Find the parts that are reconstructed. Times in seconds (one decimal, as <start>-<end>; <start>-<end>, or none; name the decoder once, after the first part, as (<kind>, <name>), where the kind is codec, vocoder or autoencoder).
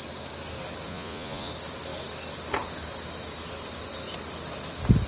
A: 0.9-1.5 (vocoder, Vocos)